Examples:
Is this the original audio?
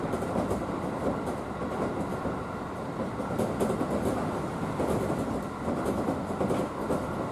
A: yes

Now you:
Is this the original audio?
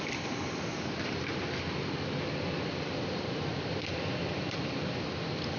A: no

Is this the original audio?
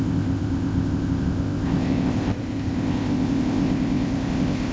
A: no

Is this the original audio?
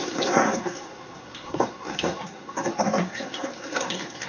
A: no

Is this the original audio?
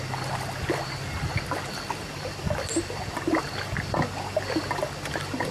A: yes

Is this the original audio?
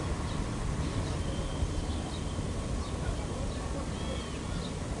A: yes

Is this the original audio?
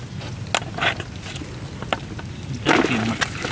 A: yes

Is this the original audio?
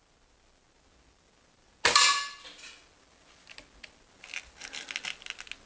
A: yes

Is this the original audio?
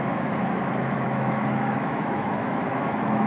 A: no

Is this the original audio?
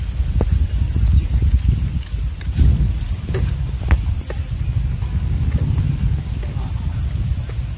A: yes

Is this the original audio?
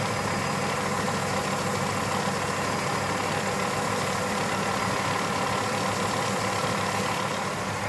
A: yes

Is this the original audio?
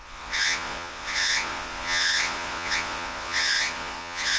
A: no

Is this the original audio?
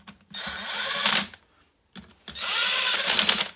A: yes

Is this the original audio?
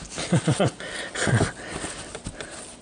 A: yes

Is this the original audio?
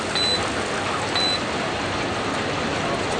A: yes